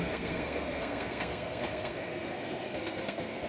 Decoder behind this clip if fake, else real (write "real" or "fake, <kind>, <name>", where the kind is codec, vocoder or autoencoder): fake, codec, SNAC